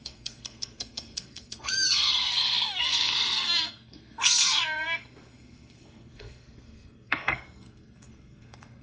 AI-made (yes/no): yes